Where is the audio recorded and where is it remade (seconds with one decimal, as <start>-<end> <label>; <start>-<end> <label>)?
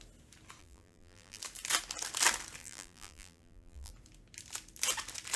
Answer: 0.0-0.6 recorded; 0.6-1.4 remade; 1.4-2.6 recorded; 2.6-3.9 remade; 3.9-5.4 recorded